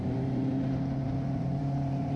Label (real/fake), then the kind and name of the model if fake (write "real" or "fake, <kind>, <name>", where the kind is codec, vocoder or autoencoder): fake, vocoder, BigVGAN v2